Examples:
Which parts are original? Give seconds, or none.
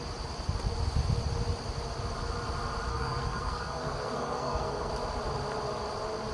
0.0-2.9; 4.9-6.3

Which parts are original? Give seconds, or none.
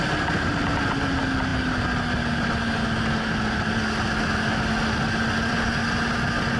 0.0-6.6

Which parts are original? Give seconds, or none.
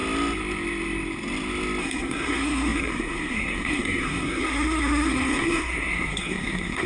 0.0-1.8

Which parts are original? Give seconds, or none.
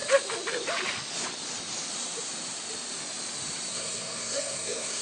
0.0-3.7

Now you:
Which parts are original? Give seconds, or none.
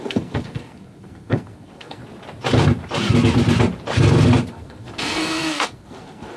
2.0-4.5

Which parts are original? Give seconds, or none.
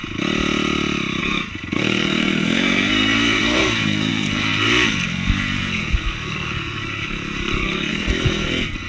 0.0-1.2